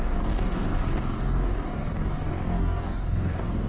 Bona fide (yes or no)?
no